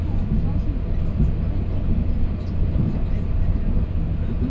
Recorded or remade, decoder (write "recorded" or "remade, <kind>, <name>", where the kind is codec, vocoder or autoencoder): recorded